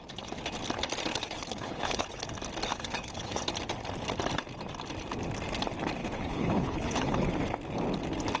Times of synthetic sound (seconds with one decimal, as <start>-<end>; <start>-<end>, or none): 1.1-2.2; 2.7-3.4; 6.0-7.3